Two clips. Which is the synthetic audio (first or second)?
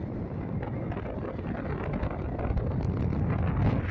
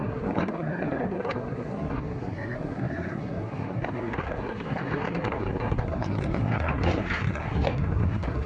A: second